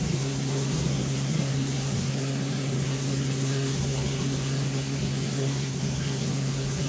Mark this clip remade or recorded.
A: remade